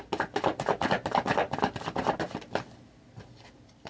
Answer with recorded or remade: recorded